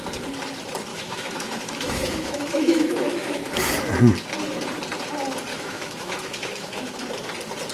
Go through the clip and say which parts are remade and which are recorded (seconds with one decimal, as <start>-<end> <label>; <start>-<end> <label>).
0.0-0.9 recorded; 0.9-3.6 remade; 3.6-5.5 recorded; 5.5-7.0 remade; 7.0-7.7 recorded